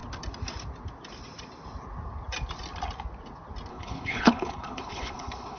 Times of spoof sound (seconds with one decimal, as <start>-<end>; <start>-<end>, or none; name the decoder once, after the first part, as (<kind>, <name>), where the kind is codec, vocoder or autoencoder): 3.7-5.6 (codec, HILCodec)